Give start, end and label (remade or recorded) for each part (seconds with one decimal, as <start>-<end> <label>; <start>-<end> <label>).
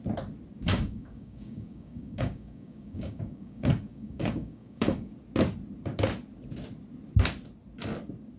0.0-0.7 recorded; 0.7-5.1 remade; 5.1-8.4 recorded